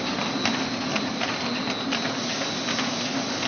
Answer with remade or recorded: recorded